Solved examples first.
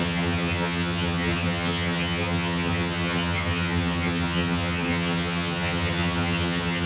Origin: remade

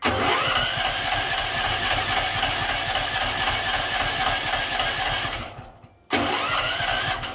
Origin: recorded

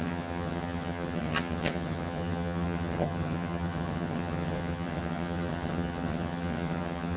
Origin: remade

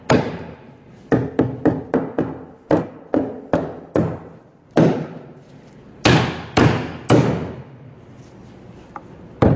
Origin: recorded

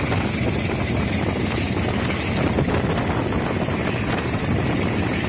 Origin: recorded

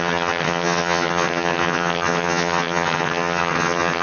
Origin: remade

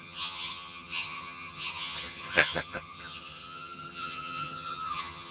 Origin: remade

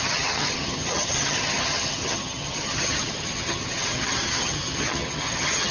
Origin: remade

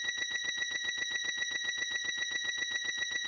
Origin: remade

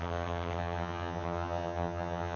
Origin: remade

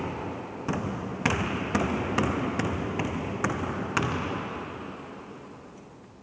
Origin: recorded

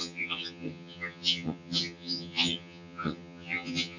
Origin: remade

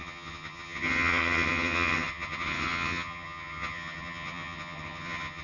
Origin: remade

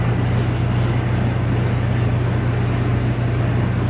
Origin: recorded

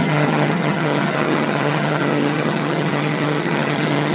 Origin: remade